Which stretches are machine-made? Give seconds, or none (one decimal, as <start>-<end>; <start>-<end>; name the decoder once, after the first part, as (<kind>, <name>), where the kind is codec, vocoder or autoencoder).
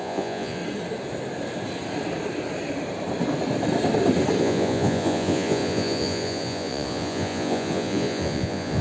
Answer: 0.0-0.6 (vocoder, Vocos); 4.4-8.8